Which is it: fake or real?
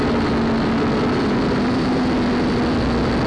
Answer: real